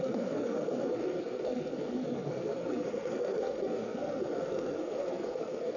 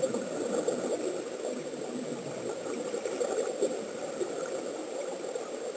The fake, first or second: first